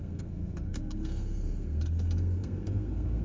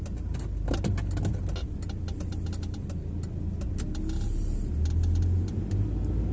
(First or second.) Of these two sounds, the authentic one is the second